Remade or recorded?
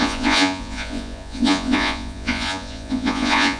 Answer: remade